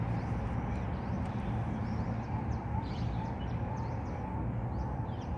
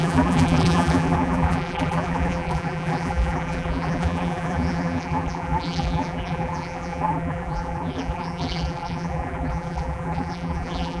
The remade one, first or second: second